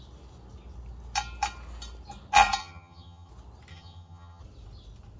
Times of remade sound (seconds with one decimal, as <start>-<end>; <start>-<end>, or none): 2.6-3.3; 3.7-4.4